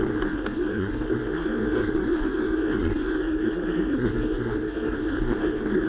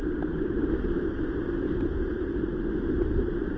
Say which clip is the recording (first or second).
second